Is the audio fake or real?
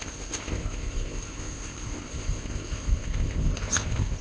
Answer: fake